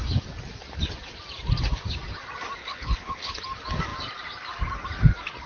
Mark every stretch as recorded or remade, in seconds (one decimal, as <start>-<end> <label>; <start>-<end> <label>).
0.0-2.6 recorded; 2.6-3.3 remade; 3.3-5.5 recorded